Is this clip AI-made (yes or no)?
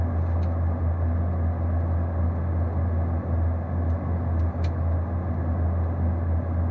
no